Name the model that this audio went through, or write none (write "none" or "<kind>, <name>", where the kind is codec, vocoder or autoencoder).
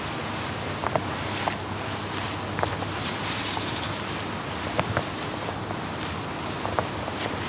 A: none